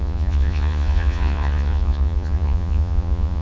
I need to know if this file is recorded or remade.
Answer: remade